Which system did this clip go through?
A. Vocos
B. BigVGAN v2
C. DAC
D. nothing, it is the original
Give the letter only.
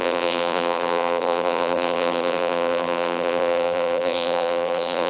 B